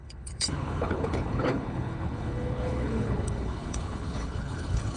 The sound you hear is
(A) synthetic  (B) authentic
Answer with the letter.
A